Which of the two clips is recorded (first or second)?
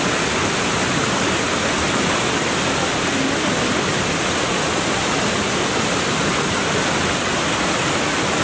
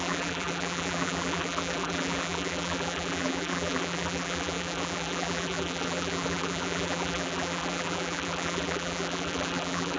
first